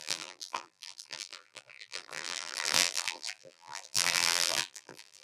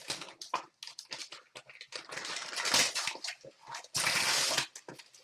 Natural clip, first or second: second